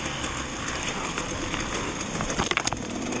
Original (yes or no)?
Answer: yes